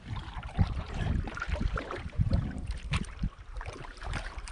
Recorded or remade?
remade